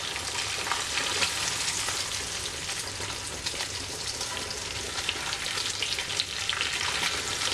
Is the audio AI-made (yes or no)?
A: no